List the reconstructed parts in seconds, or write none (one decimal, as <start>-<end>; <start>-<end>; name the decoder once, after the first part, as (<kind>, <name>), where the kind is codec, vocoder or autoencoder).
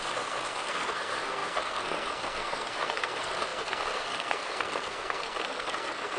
0.0-6.2 (codec, SNAC)